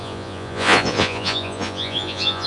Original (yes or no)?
no